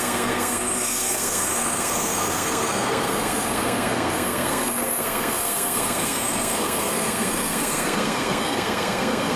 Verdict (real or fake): fake